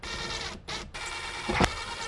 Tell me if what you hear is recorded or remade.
recorded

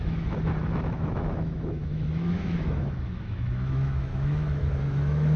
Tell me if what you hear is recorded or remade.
remade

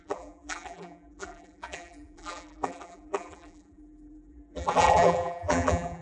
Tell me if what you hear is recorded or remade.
remade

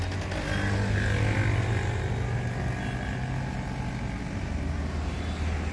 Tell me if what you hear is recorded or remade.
recorded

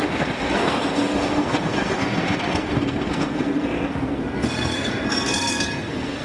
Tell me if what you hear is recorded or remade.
remade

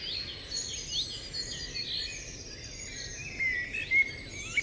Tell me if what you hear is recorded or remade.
recorded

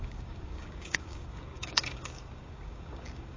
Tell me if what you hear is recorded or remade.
remade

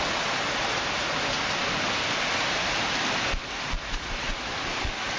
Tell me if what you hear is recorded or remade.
recorded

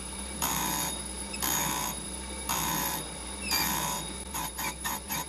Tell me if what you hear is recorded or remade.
remade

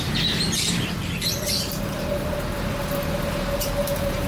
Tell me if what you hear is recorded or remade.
remade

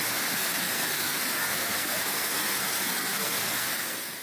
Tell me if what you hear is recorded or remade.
remade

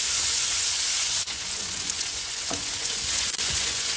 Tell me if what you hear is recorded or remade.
remade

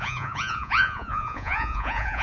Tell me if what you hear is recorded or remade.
remade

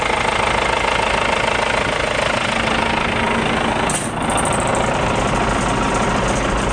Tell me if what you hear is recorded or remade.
recorded